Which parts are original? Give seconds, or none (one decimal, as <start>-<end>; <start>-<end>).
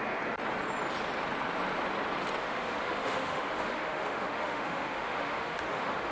0.0-2.4